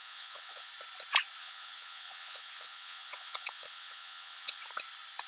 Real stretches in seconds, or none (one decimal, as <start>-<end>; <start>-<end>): 0.7-1.4; 4.6-5.3